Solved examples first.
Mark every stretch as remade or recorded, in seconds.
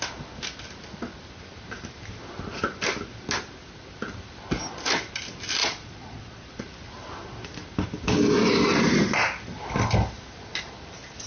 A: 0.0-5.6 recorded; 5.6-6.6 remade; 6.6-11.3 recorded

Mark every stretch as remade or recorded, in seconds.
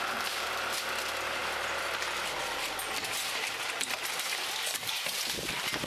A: 0.0-5.9 recorded